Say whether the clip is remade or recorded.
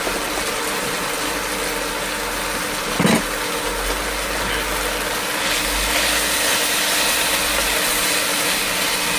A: recorded